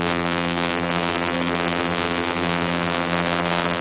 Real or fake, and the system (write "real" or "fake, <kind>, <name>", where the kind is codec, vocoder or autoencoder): fake, vocoder, BigVGAN v2